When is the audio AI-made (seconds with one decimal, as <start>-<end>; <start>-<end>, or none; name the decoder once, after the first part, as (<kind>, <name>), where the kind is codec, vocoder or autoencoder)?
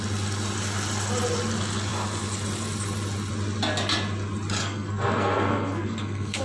4.6-6.4 (codec, SNAC)